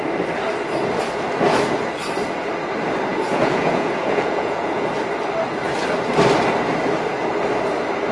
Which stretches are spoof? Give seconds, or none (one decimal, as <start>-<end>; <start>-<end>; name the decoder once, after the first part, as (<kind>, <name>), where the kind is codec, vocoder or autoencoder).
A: 3.1-4.9 (vocoder, Vocos)